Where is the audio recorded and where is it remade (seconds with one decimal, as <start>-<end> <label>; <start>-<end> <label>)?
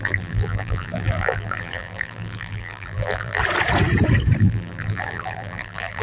0.0-3.4 remade; 3.4-4.4 recorded; 4.4-6.0 remade